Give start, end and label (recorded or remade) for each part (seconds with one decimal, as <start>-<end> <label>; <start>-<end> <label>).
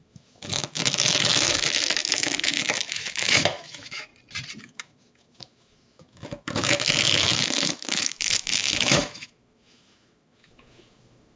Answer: 0.0-4.1 remade; 4.1-4.6 recorded; 4.6-11.4 remade